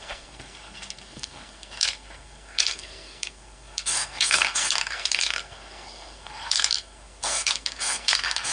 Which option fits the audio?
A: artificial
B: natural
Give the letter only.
A